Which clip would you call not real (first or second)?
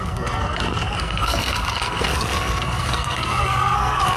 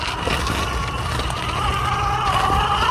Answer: first